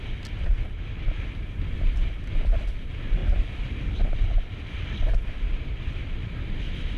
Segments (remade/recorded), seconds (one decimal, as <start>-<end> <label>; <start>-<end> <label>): 0.0-7.0 remade